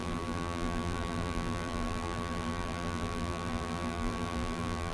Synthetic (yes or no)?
yes